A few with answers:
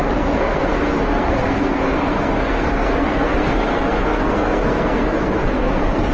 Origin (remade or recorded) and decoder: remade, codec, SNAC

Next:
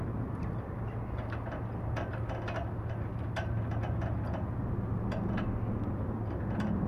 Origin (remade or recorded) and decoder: recorded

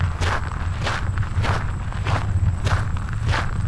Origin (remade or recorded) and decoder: recorded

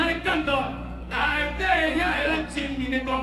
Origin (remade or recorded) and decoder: remade, codec, SNAC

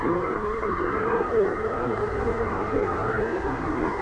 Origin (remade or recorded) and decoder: remade, codec, SNAC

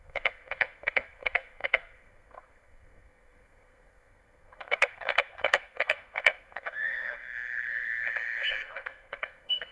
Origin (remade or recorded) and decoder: remade, codec, SNAC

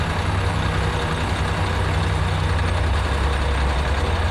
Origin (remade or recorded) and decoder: recorded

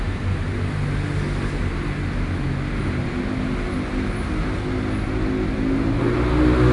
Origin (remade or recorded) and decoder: recorded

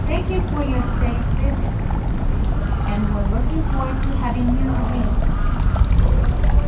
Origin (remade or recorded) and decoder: recorded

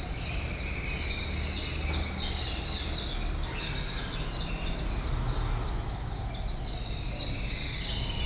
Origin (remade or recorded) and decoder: recorded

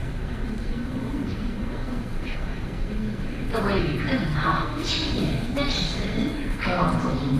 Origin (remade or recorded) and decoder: remade, codec, SNAC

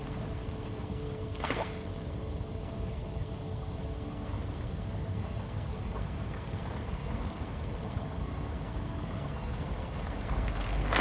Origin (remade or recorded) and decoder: remade, codec, SNAC